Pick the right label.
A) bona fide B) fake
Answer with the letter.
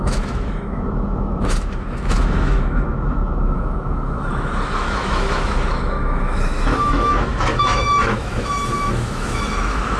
B